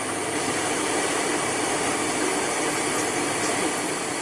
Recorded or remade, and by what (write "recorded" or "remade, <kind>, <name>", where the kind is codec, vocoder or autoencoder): remade, vocoder, BigVGAN v2